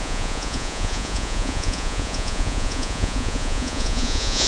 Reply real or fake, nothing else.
fake